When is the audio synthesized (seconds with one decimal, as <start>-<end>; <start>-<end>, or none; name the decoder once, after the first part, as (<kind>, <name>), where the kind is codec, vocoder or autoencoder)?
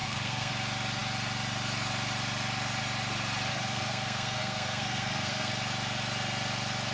0.0-0.5 (codec, SNAC); 3.5-5.5